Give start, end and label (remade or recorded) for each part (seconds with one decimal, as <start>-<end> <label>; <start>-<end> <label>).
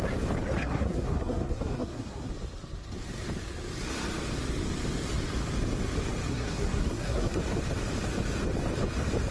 0.0-0.6 recorded; 0.6-2.3 remade; 2.3-6.3 recorded; 6.3-7.4 remade; 7.4-9.3 recorded